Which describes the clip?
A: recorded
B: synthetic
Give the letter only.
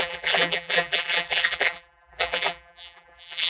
B